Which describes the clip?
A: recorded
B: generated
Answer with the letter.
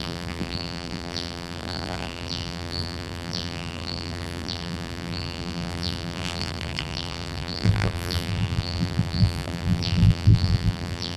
B